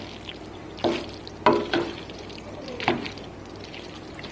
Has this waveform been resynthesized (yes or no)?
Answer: no